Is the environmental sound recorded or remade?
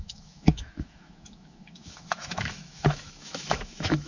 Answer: remade